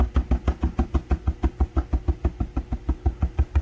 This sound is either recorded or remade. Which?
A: recorded